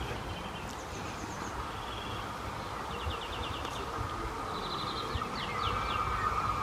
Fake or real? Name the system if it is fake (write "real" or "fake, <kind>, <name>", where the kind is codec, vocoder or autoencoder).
real